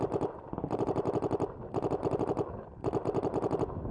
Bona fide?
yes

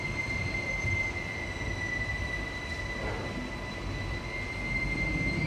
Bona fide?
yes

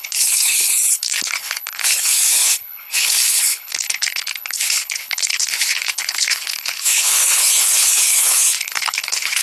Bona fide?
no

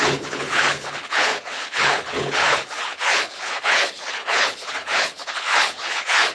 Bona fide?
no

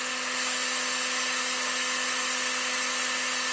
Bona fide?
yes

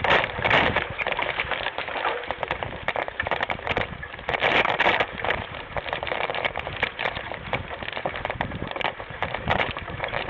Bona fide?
no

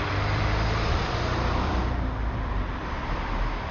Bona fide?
no